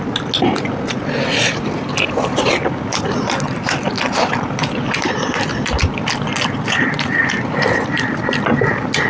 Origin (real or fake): real